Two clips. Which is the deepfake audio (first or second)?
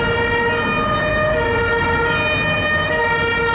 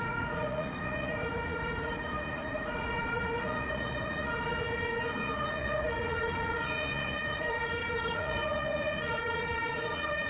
second